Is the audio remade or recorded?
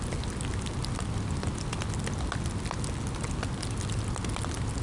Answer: recorded